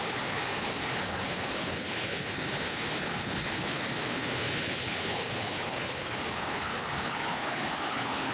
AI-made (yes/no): yes